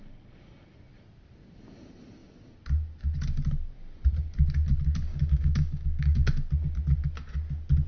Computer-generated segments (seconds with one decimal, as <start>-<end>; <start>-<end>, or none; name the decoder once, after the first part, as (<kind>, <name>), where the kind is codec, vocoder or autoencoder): 5.1-6.3 (codec, DAC)